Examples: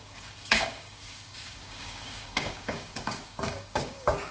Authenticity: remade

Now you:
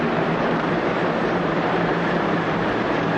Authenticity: remade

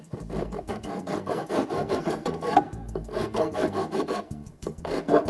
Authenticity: remade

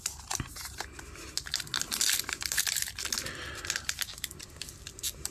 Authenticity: recorded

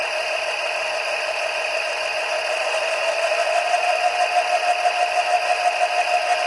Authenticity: recorded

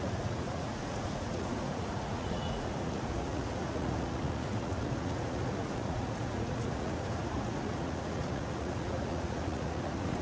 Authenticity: remade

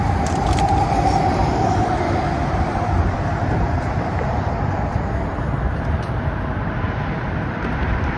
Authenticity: remade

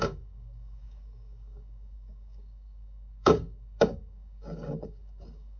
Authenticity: remade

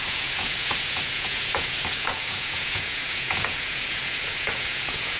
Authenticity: remade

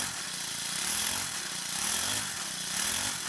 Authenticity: remade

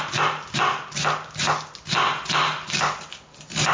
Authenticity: recorded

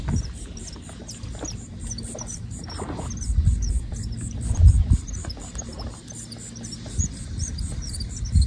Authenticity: recorded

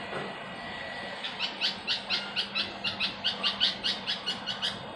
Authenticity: recorded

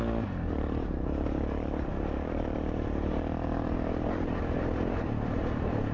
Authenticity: remade